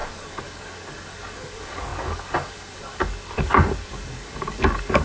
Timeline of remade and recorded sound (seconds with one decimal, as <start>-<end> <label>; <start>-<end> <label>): 0.0-5.0 remade

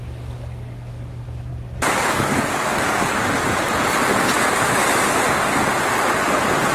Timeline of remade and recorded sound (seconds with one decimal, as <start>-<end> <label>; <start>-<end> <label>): 0.0-1.5 remade; 1.5-2.1 recorded; 2.1-3.2 remade; 3.2-6.7 recorded

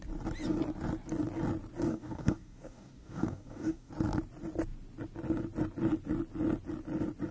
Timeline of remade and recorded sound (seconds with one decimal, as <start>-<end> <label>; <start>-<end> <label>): 0.0-1.9 recorded; 1.9-3.9 remade; 3.9-7.3 recorded

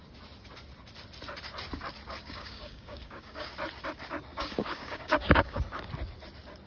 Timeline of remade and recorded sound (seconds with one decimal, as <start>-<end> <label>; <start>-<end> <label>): 0.0-2.2 recorded; 2.2-3.5 remade; 3.5-4.3 recorded; 4.3-5.6 remade; 5.6-6.7 recorded

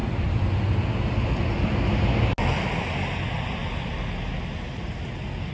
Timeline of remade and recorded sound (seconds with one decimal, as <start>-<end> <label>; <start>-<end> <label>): 0.0-5.5 recorded

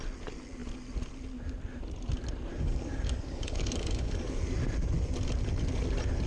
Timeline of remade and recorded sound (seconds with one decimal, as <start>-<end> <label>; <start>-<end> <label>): 0.0-2.5 recorded; 2.5-4.4 remade; 4.4-6.3 recorded

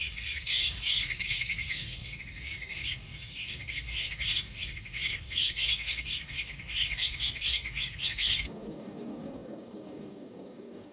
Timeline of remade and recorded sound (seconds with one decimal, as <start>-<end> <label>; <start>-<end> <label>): 0.0-10.9 remade